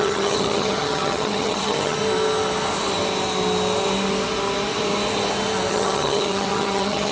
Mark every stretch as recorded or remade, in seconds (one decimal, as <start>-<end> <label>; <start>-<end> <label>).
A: 0.0-2.0 remade; 2.0-5.7 recorded; 5.7-7.1 remade